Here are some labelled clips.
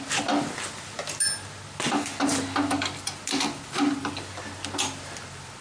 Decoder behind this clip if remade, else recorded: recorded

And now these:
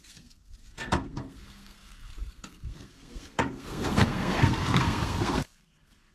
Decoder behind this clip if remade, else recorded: remade, codec, SNAC